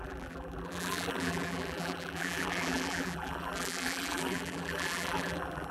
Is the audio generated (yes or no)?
yes